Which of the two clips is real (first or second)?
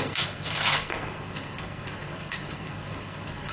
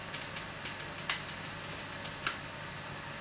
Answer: second